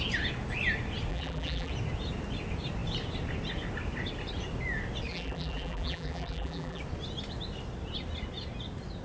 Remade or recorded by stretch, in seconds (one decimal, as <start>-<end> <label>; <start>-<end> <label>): 0.0-1.1 recorded; 1.1-1.7 remade; 1.7-5.1 recorded; 5.1-6.8 remade; 6.8-9.0 recorded